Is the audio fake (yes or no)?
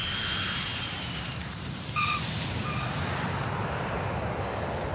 no